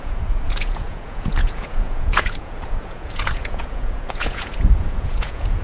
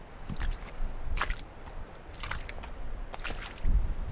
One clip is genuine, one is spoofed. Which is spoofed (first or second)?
first